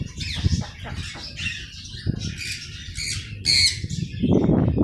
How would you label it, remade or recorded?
recorded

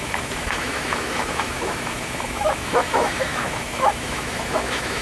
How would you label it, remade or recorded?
remade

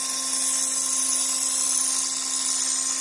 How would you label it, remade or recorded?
recorded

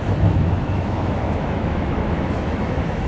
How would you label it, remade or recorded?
remade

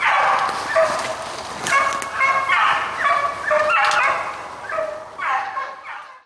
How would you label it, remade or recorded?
recorded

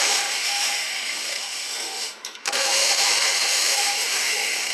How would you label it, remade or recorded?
remade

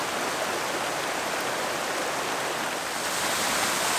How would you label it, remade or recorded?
recorded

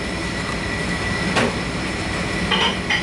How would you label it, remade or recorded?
recorded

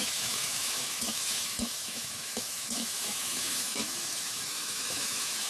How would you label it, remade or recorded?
remade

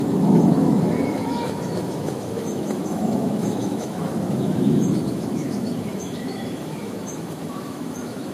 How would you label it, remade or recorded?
remade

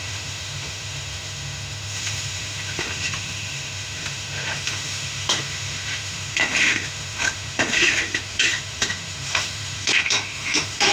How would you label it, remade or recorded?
remade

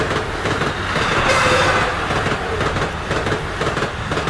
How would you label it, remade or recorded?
recorded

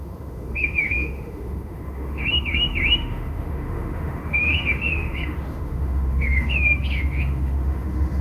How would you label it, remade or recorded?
remade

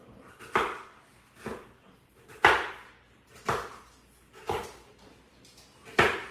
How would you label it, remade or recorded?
recorded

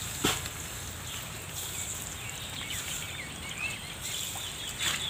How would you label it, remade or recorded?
recorded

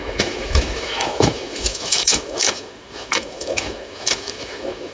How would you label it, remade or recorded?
remade